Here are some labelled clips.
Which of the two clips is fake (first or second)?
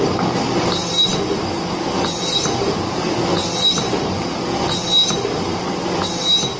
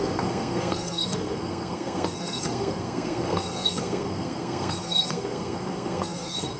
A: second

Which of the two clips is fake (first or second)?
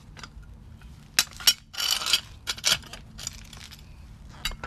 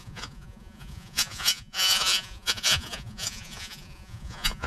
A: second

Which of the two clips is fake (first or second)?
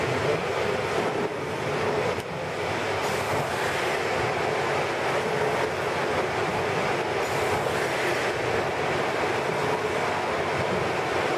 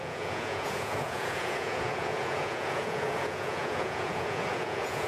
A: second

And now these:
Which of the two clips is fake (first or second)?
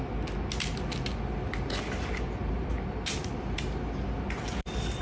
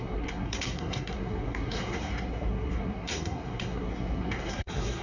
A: second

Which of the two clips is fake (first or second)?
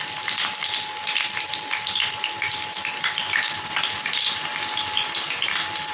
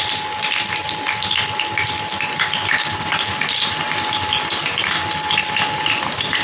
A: second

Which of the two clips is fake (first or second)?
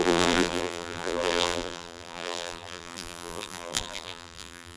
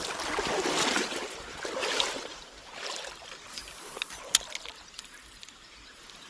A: first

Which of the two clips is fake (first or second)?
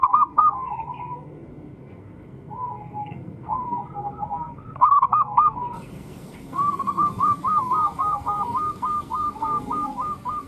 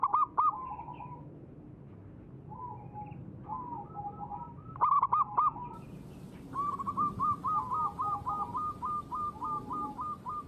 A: first